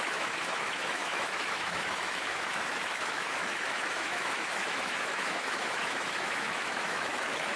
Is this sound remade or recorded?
remade